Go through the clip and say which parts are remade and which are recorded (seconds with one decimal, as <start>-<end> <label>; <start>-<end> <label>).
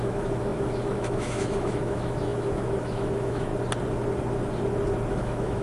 0.0-3.5 remade; 3.5-5.1 recorded; 5.1-5.6 remade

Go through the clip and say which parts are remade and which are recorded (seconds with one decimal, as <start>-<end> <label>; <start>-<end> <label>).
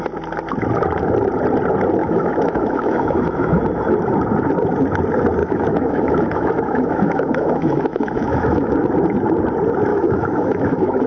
0.0-2.0 recorded; 2.0-3.6 remade; 3.6-5.4 recorded; 5.4-8.7 remade; 8.7-9.9 recorded; 9.9-11.1 remade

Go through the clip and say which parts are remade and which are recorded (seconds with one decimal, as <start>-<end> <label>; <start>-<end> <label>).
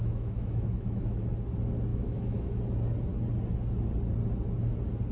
0.0-1.2 remade; 1.2-1.9 recorded; 1.9-2.6 remade; 2.6-5.1 recorded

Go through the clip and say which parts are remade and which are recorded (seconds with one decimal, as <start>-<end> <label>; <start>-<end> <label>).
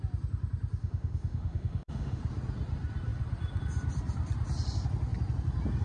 0.0-0.8 recorded; 0.8-2.2 remade; 2.2-5.8 recorded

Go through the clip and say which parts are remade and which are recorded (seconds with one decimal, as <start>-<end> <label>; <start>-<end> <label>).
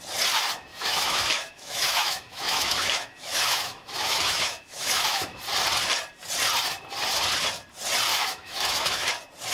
0.0-0.7 recorded; 0.7-5.4 remade; 5.4-8.1 recorded; 8.1-9.1 remade; 9.1-9.5 recorded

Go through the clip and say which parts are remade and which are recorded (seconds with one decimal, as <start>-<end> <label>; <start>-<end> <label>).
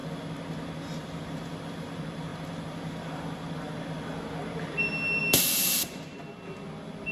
0.0-7.1 recorded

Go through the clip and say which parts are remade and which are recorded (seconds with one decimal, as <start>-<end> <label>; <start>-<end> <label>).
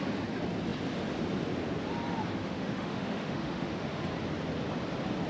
0.0-2.4 recorded; 2.4-4.0 remade; 4.0-5.3 recorded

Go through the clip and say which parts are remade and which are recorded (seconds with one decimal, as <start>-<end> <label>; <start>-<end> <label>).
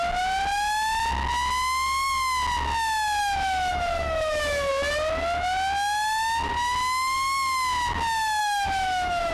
0.0-3.2 recorded; 3.2-4.7 remade; 4.7-8.4 recorded; 8.4-9.3 remade